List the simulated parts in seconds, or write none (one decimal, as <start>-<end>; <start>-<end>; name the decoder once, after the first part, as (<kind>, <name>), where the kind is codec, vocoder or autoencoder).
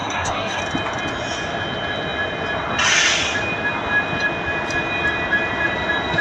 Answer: 0.0-0.6 (codec, SNAC)